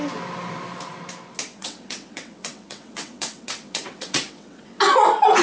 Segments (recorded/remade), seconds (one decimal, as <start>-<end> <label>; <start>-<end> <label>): 0.0-1.6 recorded; 1.6-4.8 remade; 4.8-5.4 recorded